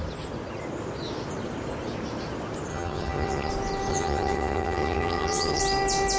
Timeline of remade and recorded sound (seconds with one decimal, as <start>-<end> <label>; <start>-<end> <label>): 0.0-2.7 recorded; 2.7-3.5 remade; 3.5-3.9 recorded; 3.9-5.6 remade; 5.6-6.2 recorded